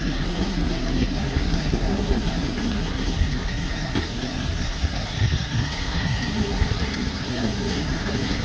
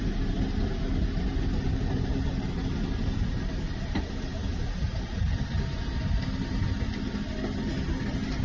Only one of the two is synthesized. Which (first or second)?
first